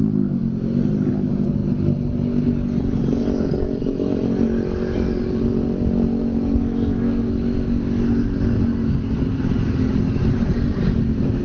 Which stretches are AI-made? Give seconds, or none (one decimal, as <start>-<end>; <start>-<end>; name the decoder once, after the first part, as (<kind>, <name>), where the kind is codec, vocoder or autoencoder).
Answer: 6.6-7.3 (codec, SNAC)